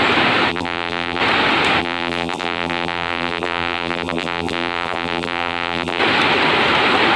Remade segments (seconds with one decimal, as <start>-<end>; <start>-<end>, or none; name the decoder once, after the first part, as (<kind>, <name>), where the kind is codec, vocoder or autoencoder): 0.5-1.2 (vocoder, BigVGAN v2); 1.8-6.0